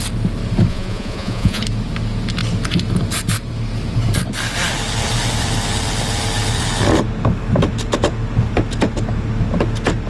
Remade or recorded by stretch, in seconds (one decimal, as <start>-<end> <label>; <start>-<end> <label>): 0.0-0.7 recorded; 0.7-1.6 remade; 1.6-10.1 recorded